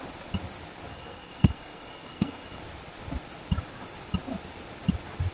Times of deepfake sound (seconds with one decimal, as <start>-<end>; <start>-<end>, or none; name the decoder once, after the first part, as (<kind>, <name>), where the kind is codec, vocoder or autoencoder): 0.9-2.6 (codec, SNAC)